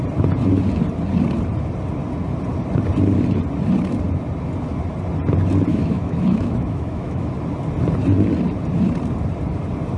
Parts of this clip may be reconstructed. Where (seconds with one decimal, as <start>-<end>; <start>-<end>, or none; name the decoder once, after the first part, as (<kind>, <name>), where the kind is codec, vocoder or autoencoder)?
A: 5.7-7.3 (autoencoder, DAC-VAE)